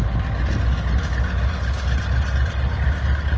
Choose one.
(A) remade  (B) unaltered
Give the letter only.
B